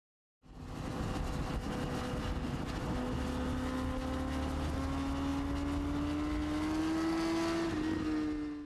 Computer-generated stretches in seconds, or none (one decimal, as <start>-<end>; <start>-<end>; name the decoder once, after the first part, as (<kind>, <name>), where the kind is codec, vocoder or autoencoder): none